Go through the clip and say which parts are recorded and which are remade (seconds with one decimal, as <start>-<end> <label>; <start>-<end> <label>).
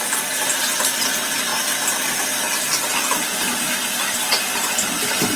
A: 0.0-5.4 recorded